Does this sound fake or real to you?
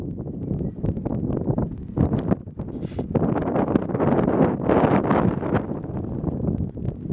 real